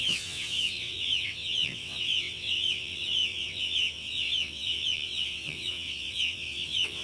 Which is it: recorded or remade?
remade